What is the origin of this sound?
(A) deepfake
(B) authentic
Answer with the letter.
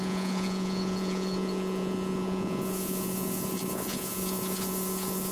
A